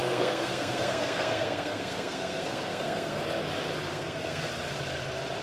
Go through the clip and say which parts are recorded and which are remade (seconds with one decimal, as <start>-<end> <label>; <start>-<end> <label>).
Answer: 0.0-3.2 remade; 3.2-3.9 recorded; 3.9-4.5 remade; 4.5-5.4 recorded